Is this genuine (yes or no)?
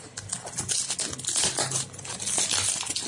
yes